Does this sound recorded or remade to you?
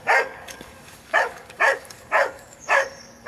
remade